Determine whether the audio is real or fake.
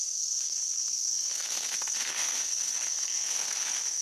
fake